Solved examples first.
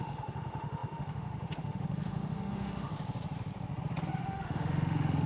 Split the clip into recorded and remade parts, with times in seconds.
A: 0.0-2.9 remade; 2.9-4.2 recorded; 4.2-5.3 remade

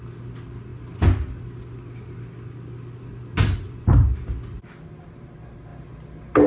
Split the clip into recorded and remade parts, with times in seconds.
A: 0.0-6.5 recorded

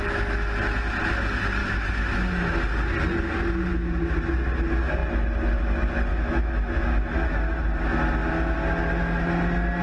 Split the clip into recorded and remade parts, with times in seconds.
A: 0.0-1.6 recorded; 1.6-2.6 remade; 2.6-6.1 recorded; 6.1-7.6 remade; 7.6-9.8 recorded

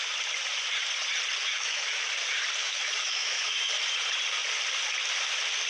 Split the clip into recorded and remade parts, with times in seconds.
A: 0.0-1.4 recorded; 1.4-2.1 remade; 2.1-2.6 recorded; 2.6-3.7 remade; 3.7-5.7 recorded

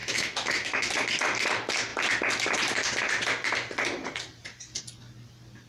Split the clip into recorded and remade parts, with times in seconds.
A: 0.0-0.9 remade; 0.9-5.7 recorded